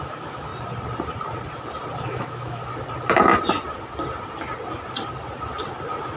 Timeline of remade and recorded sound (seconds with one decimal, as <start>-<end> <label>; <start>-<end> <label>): 0.0-0.5 remade; 0.5-2.0 recorded; 2.0-2.6 remade; 2.6-6.2 recorded